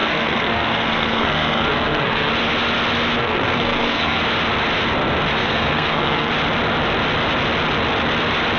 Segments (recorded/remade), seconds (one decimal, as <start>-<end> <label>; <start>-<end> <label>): 0.0-2.3 remade; 2.3-3.2 recorded; 3.2-4.2 remade; 4.2-5.4 recorded; 5.4-6.3 remade; 6.3-8.6 recorded